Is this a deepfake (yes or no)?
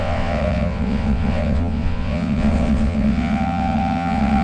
yes